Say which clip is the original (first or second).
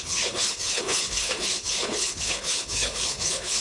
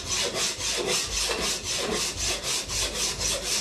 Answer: second